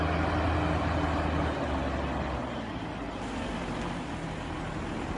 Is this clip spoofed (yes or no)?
no